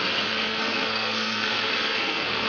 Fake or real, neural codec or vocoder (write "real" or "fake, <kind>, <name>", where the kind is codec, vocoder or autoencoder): fake, codec, SNAC